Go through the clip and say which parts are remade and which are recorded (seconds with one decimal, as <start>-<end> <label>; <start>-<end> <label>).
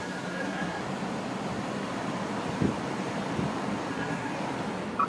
0.0-0.8 remade; 0.8-3.9 recorded; 3.9-4.3 remade; 4.3-5.1 recorded